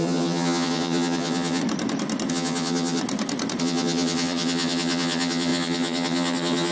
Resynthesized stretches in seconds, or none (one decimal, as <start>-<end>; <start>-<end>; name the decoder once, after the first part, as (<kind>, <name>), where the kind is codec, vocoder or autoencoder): 0.0-1.6 (vocoder, HiFi-GAN); 2.3-3.0; 3.6-6.7